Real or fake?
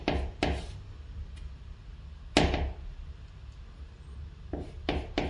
real